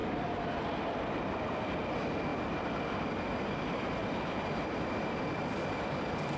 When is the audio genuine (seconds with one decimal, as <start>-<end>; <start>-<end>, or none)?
0.0-1.3

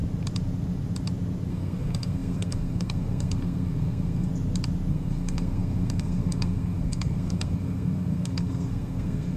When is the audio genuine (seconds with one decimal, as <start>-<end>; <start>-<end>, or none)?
0.0-1.5; 4.3-4.9

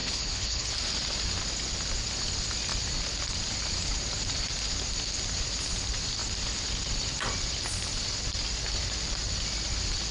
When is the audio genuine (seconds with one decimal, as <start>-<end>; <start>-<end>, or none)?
0.7-10.1